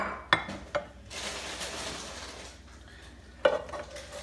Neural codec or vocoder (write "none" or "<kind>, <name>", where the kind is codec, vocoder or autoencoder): none